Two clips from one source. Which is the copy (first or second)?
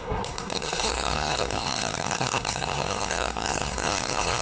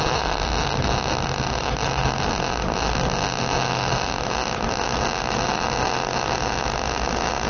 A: first